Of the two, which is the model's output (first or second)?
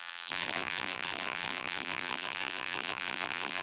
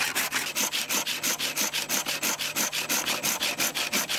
first